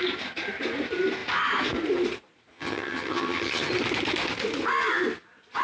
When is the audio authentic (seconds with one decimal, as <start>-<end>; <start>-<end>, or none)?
0.0-2.5; 3.7-5.6